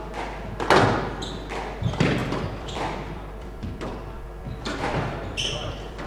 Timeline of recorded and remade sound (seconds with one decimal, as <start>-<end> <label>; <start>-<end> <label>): 0.0-2.2 recorded; 2.2-6.1 remade